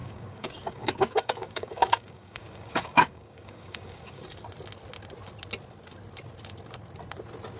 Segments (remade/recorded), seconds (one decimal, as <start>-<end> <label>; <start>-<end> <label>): 0.0-4.2 remade; 4.2-7.6 recorded